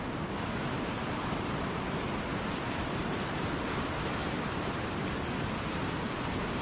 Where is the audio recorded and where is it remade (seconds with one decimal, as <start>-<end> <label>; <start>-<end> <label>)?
0.0-2.3 recorded; 2.3-3.5 remade; 3.5-6.6 recorded